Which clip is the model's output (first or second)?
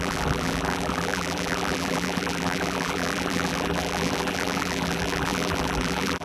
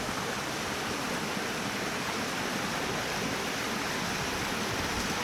first